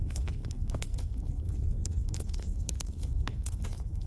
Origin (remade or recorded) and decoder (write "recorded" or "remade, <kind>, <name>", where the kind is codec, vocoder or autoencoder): remade, codec, SNAC